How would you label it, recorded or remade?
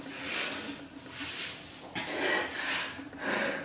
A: recorded